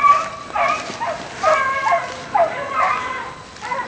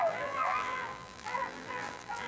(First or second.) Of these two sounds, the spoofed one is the second